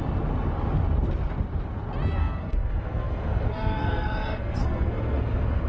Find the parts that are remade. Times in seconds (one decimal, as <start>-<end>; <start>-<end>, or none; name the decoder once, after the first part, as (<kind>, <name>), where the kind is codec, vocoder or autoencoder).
2.2-5.7 (codec, SNAC)